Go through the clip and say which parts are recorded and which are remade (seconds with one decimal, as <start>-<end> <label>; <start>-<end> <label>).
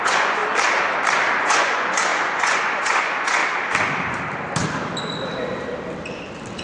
0.0-0.4 remade; 0.4-1.4 recorded; 1.4-3.4 remade; 3.4-6.6 recorded